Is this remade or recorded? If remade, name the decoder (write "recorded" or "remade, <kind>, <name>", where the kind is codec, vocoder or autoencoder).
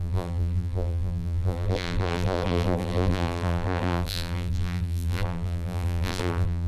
remade, vocoder, BigVGAN v2